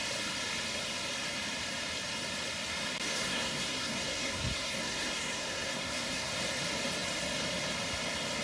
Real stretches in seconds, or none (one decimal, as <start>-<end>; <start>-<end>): 0.0-3.1; 6.3-8.4